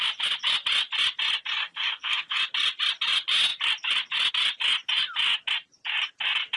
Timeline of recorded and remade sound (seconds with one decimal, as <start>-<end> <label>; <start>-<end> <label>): 0.0-1.6 recorded; 1.6-2.4 remade; 2.4-6.6 recorded